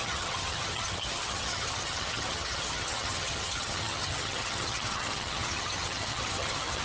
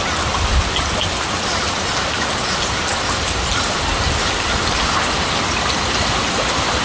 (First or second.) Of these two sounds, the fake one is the first